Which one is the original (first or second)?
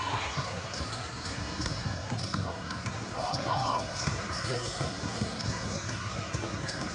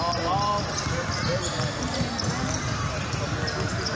second